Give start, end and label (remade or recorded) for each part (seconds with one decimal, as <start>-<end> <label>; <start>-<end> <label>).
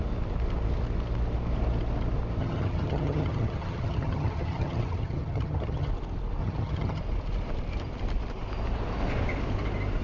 0.0-2.4 recorded; 2.4-5.9 remade; 5.9-6.4 recorded; 6.4-7.0 remade; 7.0-10.0 recorded